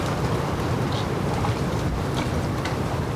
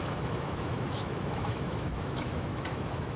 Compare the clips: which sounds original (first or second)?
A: first